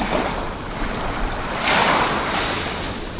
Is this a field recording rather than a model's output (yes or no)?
yes